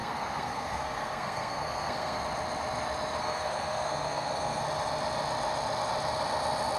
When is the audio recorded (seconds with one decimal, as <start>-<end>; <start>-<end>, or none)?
2.2-3.2; 4.6-6.8